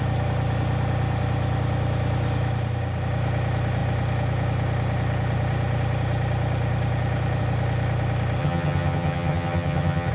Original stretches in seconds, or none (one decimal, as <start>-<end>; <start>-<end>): 0.0-8.4